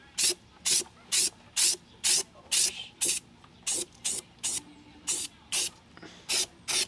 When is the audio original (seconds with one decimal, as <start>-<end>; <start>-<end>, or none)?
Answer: 0.0-6.9